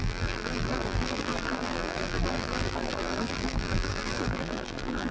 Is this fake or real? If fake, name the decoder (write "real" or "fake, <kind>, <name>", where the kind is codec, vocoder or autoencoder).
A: fake, vocoder, BigVGAN v2